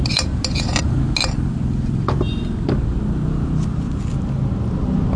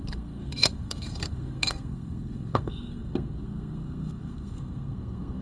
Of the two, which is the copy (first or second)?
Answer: second